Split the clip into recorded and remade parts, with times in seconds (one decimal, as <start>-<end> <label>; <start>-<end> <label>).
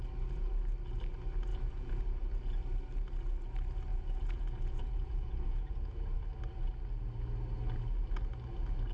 0.0-1.5 recorded; 1.5-2.0 remade; 2.0-3.9 recorded; 3.9-6.2 remade; 6.2-8.9 recorded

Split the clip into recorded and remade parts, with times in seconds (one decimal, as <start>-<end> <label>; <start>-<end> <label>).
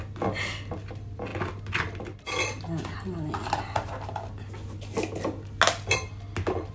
0.0-6.7 recorded